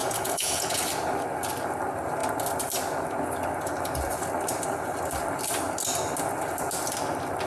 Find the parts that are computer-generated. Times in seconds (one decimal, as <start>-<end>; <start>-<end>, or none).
0.0-0.8